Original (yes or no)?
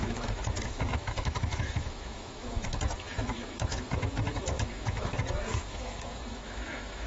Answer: no